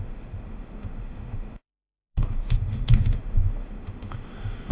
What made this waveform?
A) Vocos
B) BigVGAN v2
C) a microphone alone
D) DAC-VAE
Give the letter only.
D